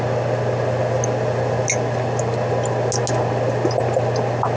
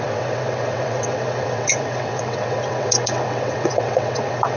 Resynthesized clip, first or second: second